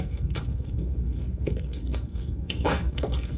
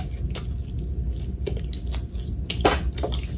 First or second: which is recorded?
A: second